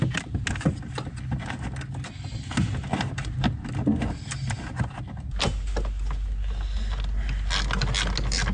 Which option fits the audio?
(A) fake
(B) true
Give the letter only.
B